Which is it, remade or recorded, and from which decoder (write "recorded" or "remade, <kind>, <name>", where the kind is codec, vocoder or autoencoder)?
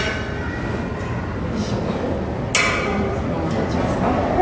recorded